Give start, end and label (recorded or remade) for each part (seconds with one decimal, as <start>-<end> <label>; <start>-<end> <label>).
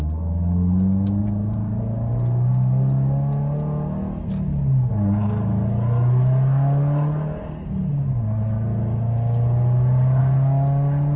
0.0-1.2 recorded; 1.2-1.8 remade; 1.8-11.2 recorded